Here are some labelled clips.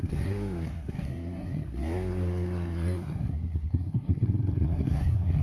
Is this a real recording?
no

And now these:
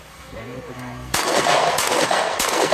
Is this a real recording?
no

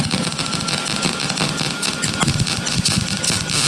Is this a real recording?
yes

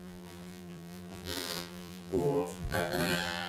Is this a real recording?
no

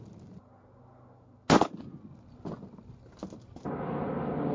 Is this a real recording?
yes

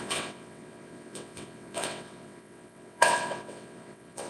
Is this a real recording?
no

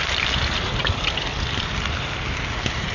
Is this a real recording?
yes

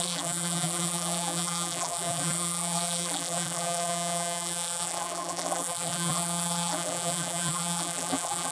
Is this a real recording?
no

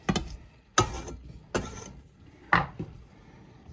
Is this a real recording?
yes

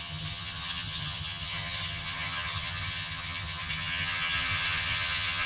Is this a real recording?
no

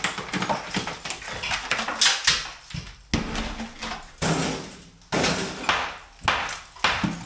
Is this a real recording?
yes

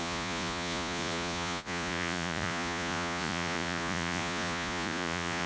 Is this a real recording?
no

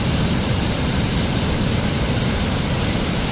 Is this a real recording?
yes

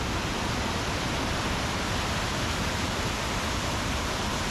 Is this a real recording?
yes